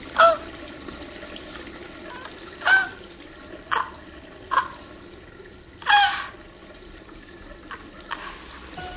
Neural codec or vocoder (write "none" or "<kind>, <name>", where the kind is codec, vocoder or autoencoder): none